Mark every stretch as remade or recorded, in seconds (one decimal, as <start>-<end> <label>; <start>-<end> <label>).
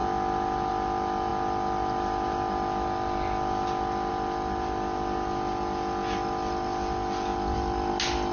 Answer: 0.0-8.3 recorded